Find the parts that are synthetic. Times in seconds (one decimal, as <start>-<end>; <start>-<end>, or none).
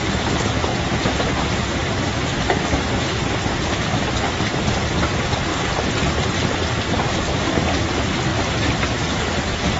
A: 0.7-1.9; 8.3-9.2